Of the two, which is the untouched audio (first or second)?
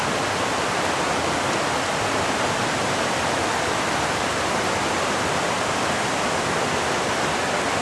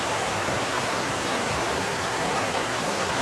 first